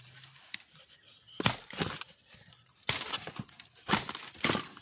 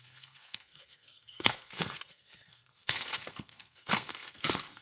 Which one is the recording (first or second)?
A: first